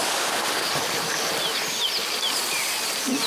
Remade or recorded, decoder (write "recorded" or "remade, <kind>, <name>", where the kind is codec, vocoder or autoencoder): recorded